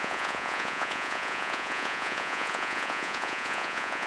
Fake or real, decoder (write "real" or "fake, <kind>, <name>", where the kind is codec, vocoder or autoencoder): fake, vocoder, Vocos